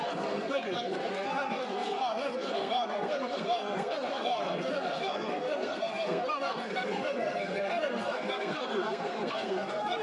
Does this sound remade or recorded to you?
remade